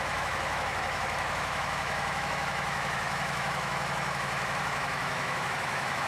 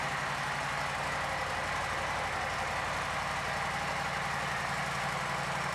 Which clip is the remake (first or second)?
first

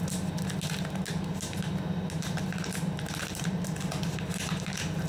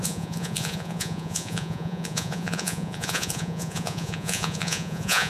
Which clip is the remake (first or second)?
second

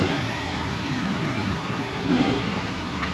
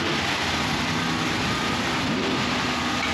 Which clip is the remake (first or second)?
first